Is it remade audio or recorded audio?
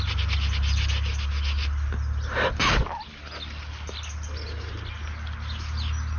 recorded